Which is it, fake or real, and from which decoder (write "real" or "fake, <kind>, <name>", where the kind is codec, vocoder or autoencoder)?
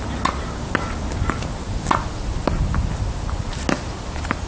real